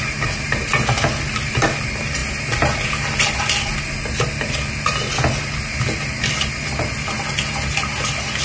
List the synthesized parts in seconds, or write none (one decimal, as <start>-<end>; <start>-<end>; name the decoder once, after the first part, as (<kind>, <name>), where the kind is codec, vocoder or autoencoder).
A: none